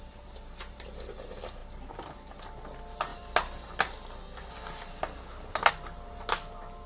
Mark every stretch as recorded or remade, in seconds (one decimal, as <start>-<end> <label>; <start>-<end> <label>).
0.0-6.9 recorded